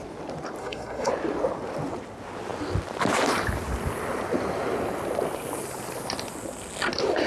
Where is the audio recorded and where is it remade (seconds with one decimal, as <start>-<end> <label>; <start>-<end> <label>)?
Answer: 0.0-0.6 recorded; 0.6-1.1 remade; 1.1-7.3 recorded

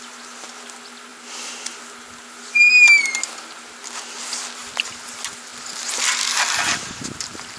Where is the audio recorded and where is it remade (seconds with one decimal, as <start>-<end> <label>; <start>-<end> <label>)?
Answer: 0.0-7.6 recorded

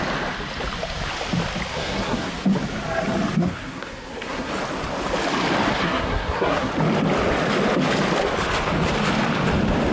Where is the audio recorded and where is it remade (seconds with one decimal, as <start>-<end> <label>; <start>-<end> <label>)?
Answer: 0.0-1.7 recorded; 1.7-2.3 remade; 2.3-3.4 recorded; 3.4-4.5 remade; 4.5-5.7 recorded; 5.7-6.7 remade; 6.7-9.9 recorded